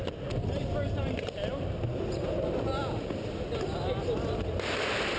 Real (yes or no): yes